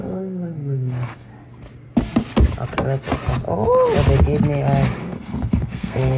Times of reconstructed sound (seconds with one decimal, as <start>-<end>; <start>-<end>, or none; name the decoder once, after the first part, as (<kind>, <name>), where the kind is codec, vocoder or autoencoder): 0.0-1.3 (codec, SNAC); 5.0-6.2